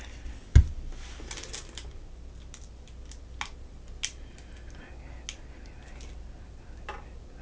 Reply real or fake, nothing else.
real